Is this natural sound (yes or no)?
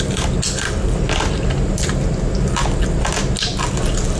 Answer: yes